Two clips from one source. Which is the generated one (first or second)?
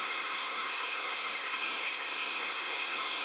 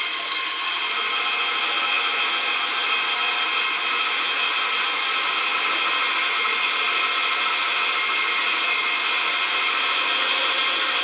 first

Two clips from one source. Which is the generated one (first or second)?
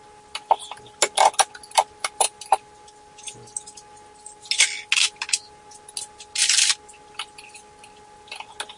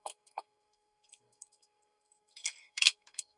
second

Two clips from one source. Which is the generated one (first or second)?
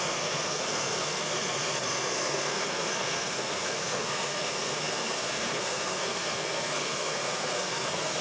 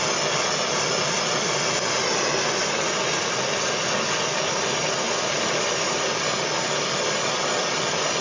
first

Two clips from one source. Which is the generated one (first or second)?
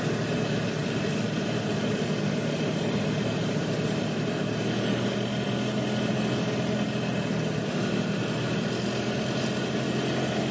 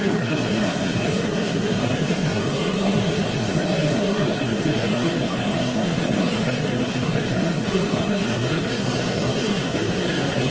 second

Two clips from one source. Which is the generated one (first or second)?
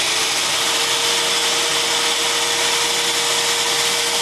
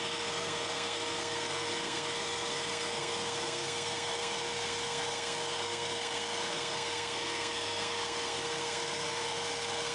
second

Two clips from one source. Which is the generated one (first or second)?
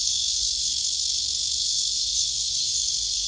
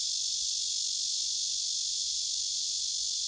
first